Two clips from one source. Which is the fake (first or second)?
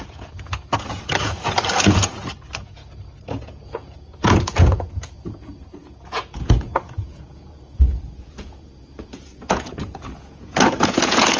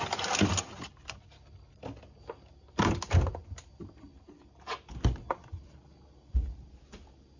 first